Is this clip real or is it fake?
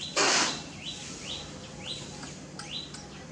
real